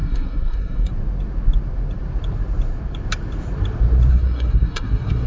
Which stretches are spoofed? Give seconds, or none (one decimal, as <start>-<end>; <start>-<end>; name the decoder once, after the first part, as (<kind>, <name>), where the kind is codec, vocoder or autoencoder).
0.0-0.9 (codec, SNAC); 4.1-5.3